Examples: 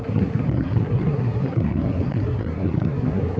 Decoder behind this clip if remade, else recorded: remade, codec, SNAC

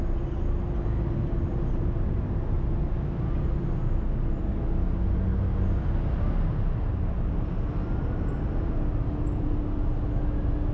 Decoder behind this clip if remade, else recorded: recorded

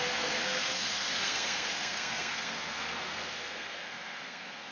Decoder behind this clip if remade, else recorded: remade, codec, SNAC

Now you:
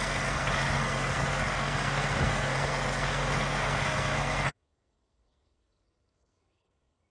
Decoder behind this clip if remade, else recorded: remade, codec, SNAC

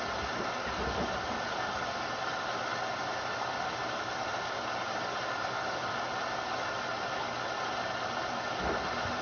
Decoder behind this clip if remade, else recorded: recorded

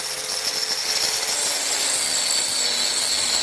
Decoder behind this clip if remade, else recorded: recorded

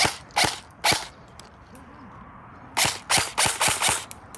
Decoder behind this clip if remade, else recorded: recorded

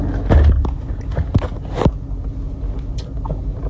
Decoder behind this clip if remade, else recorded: recorded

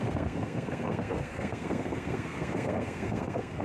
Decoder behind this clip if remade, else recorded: remade, codec, SNAC